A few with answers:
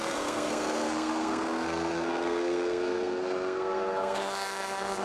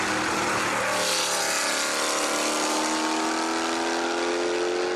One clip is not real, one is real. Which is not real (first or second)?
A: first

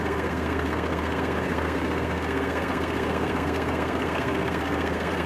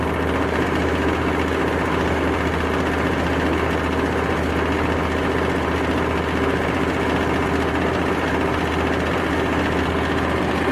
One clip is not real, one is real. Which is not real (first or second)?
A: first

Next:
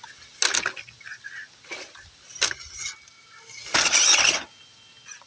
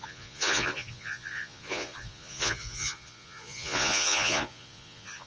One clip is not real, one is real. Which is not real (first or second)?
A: second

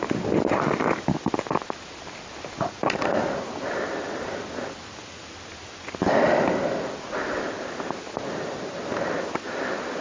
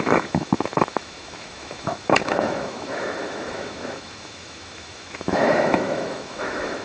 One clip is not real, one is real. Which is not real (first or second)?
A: second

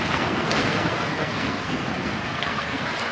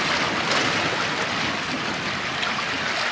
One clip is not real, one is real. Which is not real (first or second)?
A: first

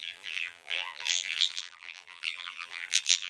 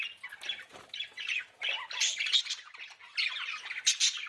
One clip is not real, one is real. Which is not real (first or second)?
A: first